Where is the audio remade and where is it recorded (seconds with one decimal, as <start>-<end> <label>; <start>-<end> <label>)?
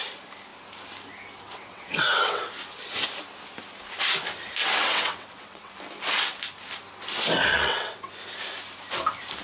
0.0-1.7 recorded; 1.7-2.4 remade; 2.4-4.6 recorded; 4.6-5.7 remade; 5.7-7.5 recorded; 7.5-8.1 remade; 8.1-9.4 recorded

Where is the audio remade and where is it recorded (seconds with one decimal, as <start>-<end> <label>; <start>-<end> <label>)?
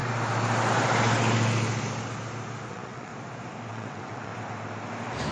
0.0-2.7 recorded; 2.7-3.1 remade; 3.1-3.7 recorded; 3.7-4.3 remade; 4.3-5.3 recorded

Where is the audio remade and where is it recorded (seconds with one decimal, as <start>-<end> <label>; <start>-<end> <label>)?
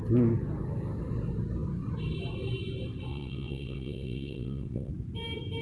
0.0-3.1 recorded; 3.1-4.9 remade; 4.9-5.6 recorded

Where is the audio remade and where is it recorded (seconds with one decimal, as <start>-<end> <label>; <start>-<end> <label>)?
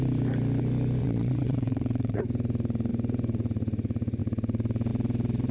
0.0-1.0 recorded; 1.0-2.2 remade; 2.2-5.5 recorded